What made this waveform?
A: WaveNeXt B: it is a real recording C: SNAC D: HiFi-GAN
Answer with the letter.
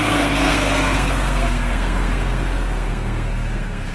C